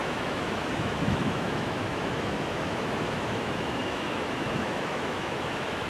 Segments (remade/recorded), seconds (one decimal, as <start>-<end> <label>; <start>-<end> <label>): 0.0-5.9 remade